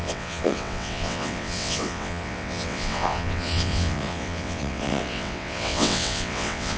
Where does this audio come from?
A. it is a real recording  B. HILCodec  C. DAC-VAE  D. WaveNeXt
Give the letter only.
D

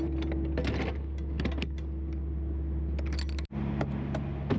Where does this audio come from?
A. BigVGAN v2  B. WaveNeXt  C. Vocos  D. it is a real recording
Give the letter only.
D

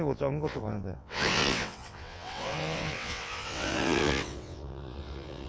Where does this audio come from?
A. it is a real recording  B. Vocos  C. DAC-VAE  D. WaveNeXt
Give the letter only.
D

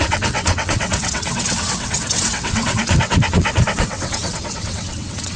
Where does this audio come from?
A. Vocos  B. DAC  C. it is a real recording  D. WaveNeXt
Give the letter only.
D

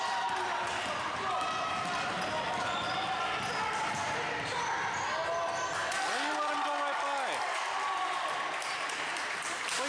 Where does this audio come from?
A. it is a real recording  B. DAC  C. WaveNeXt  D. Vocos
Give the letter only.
A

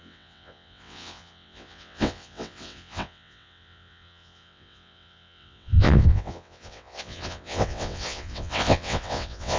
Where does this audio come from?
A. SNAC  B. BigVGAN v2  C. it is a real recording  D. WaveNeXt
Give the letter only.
D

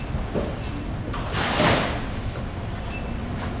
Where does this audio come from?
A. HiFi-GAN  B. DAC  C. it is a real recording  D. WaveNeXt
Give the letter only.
C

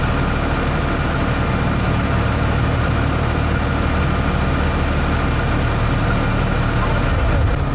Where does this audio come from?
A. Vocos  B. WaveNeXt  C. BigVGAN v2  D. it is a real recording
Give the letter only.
D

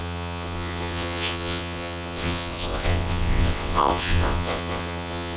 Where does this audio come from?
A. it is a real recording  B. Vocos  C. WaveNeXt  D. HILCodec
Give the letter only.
C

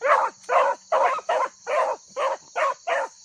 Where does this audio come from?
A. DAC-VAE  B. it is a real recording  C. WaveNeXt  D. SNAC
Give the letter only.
B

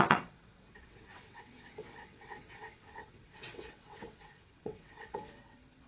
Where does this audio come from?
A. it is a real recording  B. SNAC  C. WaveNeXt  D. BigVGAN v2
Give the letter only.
C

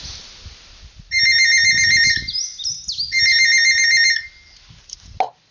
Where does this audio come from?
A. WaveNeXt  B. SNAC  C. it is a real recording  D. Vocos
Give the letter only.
C